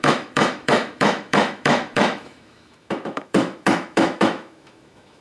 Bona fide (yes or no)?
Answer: no